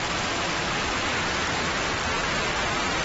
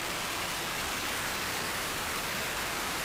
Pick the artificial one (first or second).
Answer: second